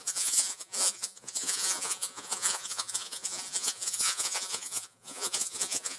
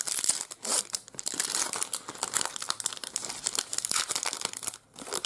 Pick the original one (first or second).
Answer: second